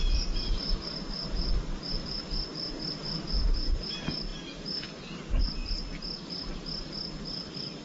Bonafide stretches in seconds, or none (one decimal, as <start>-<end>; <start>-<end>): 0.0-7.8